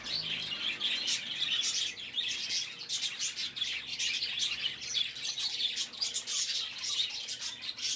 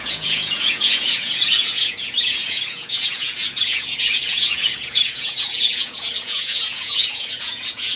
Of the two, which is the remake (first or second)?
second